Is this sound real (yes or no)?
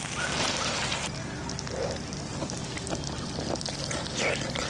yes